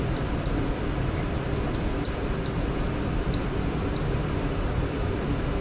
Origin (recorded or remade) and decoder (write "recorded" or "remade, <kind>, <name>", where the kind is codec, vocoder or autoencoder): remade, vocoder, BigVGAN v2